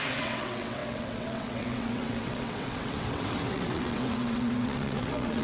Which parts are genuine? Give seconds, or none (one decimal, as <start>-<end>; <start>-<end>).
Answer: none